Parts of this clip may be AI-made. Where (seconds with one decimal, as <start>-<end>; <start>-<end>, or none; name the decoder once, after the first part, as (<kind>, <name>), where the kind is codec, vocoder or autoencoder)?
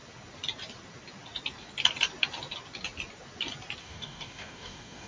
3.8-5.1 (codec, DAC)